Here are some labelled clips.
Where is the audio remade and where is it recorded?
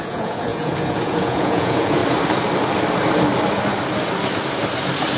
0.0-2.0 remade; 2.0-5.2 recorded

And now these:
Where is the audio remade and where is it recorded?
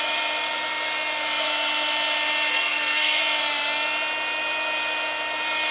0.0-2.5 recorded; 2.5-3.2 remade; 3.2-5.7 recorded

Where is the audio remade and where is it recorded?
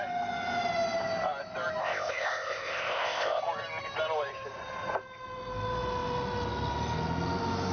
0.0-1.8 recorded; 1.8-3.4 remade; 3.4-7.7 recorded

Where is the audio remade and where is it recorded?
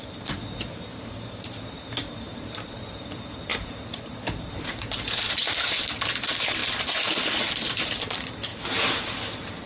0.0-8.5 remade; 8.5-9.7 recorded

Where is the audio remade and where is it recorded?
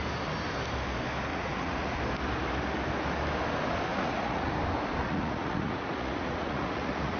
0.0-1.3 recorded; 1.3-2.0 remade; 2.0-3.9 recorded; 3.9-4.5 remade; 4.5-5.0 recorded; 5.0-7.2 remade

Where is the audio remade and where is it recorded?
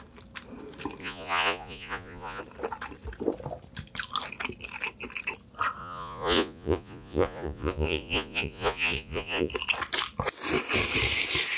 0.0-1.0 recorded; 1.0-2.4 remade; 2.4-5.8 recorded; 5.8-9.5 remade; 9.5-11.6 recorded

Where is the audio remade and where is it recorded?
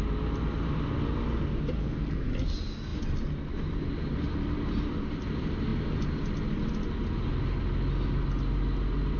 0.0-1.8 recorded; 1.8-2.3 remade; 2.3-9.2 recorded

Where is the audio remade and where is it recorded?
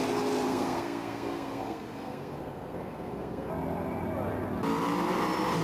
0.0-0.5 recorded; 0.5-3.5 remade; 3.5-5.6 recorded